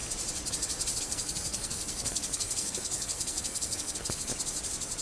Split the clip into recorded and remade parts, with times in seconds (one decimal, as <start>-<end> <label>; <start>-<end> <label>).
0.0-1.0 recorded; 1.0-4.3 remade; 4.3-5.0 recorded